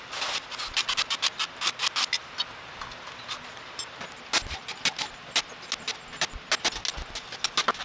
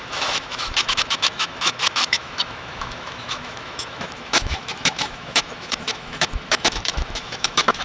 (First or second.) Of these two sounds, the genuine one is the first